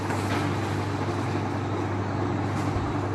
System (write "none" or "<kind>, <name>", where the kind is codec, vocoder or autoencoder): none